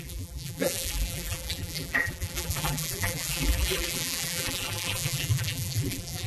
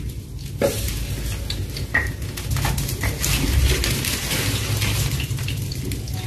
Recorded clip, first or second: second